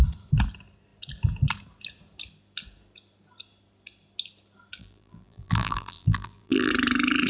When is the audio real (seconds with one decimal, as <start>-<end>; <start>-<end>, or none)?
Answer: 0.0-4.8; 6.7-7.3